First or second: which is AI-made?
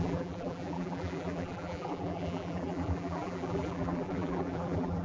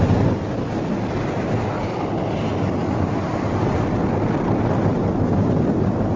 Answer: first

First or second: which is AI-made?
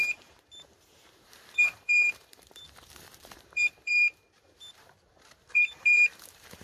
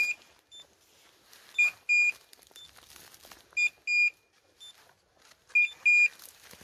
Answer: first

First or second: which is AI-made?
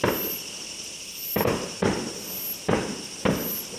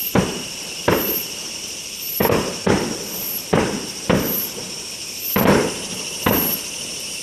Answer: second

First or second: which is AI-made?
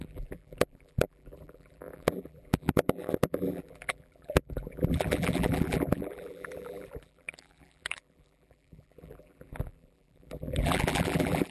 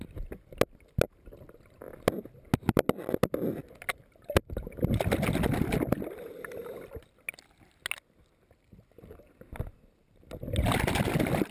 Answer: first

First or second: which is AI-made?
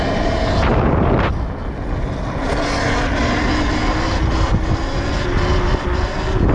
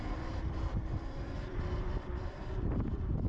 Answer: second